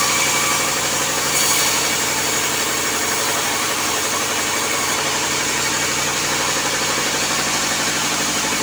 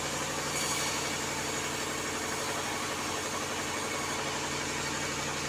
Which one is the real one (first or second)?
second